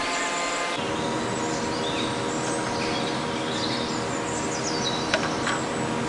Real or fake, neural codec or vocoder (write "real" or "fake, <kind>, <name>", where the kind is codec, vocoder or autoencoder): real